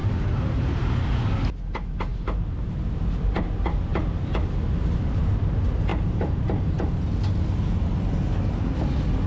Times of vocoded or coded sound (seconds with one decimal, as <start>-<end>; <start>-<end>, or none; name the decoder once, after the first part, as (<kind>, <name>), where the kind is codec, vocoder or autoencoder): 0.0-1.2 (vocoder, BigVGAN v2); 2.1-2.7; 5.9-6.9